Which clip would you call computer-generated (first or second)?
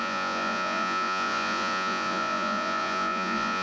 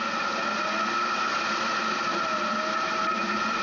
first